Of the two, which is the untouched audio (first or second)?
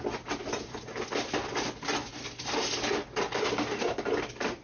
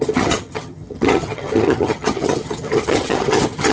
first